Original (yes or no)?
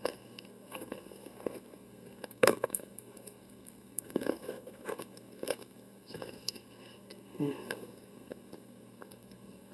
no